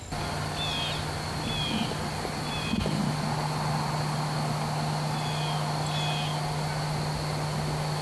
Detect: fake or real real